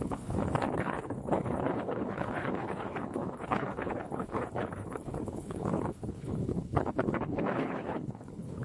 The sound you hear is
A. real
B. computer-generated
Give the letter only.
B